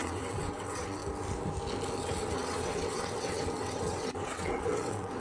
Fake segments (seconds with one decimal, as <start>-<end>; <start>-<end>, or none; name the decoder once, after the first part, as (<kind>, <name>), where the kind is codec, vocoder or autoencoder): 0.0-1.0 (vocoder, WaveNeXt); 2.0-5.2